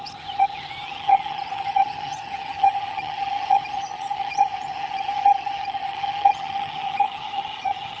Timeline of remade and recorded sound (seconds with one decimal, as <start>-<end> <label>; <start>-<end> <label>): 0.0-8.0 remade